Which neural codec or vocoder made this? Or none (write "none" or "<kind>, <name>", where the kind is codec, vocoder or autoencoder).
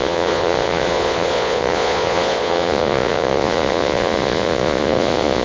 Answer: vocoder, Vocos